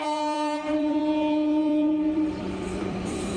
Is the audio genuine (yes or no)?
no